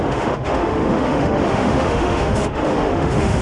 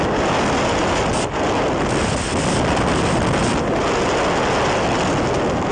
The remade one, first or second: first